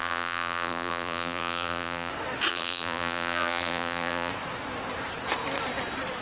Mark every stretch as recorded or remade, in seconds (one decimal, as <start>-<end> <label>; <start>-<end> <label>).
0.0-2.1 remade; 2.1-2.5 recorded; 2.5-4.3 remade; 4.3-6.2 recorded